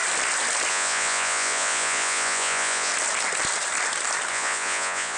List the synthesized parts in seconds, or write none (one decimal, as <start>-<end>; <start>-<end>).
0.7-2.9; 4.3-5.2